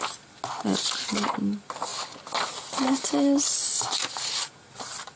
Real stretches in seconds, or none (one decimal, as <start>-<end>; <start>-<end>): 0.0-5.2